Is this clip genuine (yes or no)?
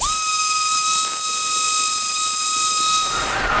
yes